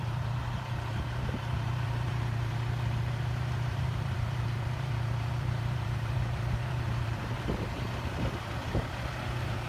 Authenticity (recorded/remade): remade